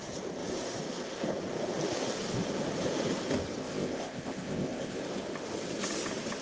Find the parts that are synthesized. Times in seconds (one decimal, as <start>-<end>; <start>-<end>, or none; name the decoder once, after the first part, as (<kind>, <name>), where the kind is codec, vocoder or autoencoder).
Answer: 3.6-5.0 (codec, ZipCodec)